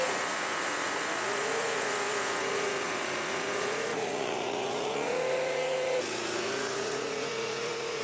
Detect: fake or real fake